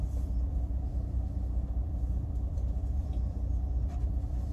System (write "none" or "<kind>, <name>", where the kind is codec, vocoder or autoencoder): vocoder, BigVGAN v2